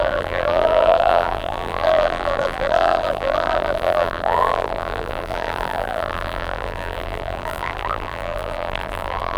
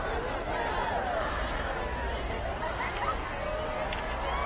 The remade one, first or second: first